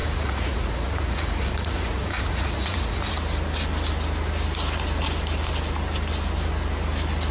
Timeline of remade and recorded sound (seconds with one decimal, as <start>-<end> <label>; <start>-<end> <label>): 0.0-3.1 remade; 3.1-7.3 recorded